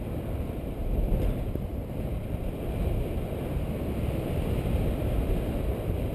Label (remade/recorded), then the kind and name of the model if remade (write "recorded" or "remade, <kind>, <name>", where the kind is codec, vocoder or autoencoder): recorded